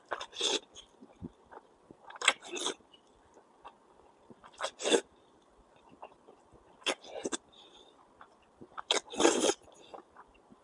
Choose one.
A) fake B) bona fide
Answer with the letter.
A